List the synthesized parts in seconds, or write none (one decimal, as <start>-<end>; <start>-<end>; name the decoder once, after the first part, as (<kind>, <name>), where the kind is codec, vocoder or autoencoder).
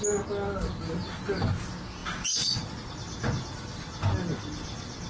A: none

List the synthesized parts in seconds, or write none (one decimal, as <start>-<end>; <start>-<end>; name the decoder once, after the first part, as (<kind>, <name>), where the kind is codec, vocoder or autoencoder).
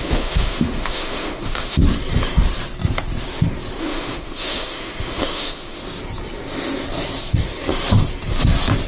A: 0.0-1.8 (autoencoder, DAC-VAE); 3.8-5.8